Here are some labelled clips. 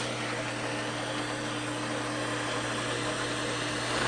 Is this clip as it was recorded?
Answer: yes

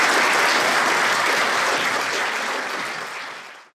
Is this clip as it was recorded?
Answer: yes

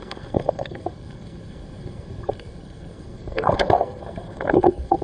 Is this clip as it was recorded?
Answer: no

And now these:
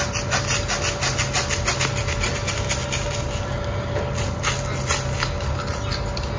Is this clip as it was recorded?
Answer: yes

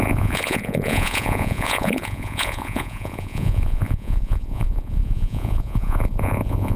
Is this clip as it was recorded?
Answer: no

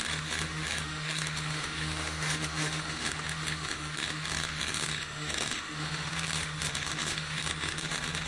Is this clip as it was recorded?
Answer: no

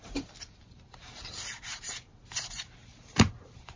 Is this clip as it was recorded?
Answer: no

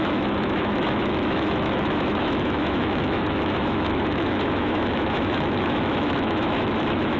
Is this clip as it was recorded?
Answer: no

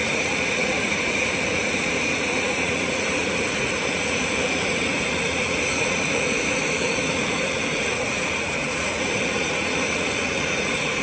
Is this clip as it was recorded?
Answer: no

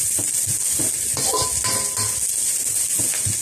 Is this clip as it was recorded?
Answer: yes